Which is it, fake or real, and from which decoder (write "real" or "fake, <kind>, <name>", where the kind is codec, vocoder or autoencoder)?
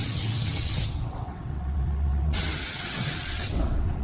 fake, vocoder, WaveNeXt